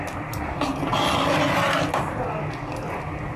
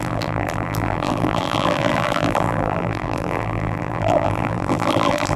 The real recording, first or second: first